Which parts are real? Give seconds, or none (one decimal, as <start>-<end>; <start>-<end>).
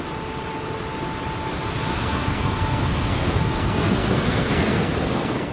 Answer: 0.0-1.9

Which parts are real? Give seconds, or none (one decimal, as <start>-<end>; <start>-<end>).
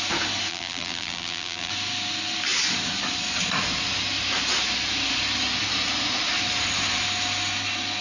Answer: 0.0-0.5; 1.7-8.0